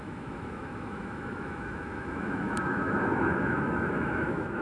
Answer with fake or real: fake